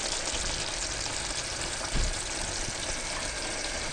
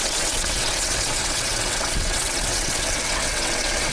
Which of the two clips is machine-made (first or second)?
second